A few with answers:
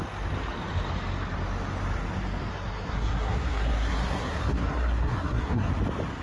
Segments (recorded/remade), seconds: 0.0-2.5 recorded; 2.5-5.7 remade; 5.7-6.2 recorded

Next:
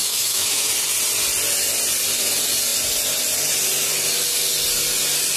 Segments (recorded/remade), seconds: 0.0-0.7 remade; 0.7-5.4 recorded

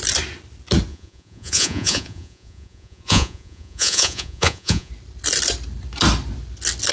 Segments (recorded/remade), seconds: 0.0-0.9 recorded; 0.9-4.9 remade; 4.9-6.9 recorded

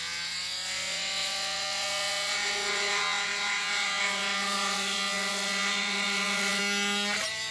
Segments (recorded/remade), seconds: 0.0-6.6 remade; 6.6-7.5 recorded

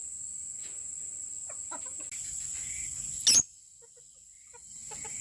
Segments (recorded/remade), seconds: 0.0-5.2 recorded

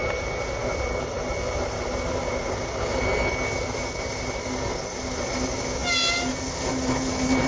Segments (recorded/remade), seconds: 0.0-7.5 recorded